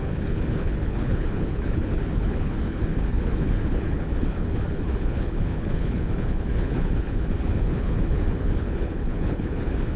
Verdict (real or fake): fake